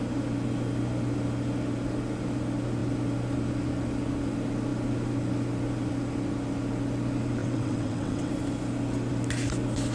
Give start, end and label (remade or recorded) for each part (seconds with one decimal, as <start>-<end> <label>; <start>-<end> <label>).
0.0-7.4 recorded; 7.4-8.3 remade; 8.3-9.9 recorded